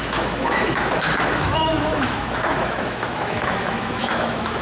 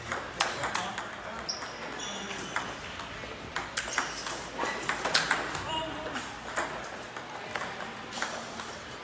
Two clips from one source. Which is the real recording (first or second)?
second